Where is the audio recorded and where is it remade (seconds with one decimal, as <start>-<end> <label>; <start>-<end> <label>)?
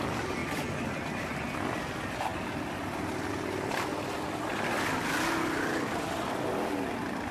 0.0-7.3 recorded